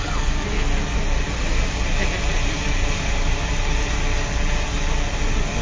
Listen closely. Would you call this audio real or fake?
real